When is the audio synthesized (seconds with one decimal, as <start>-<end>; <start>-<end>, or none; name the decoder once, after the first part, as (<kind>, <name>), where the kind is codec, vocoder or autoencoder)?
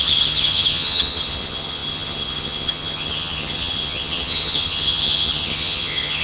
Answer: 0.0-6.2 (vocoder, HiFi-GAN)